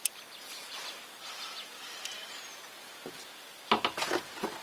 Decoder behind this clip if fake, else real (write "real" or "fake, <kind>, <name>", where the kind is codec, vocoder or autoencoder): real